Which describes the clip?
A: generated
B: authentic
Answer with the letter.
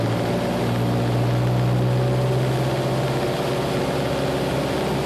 B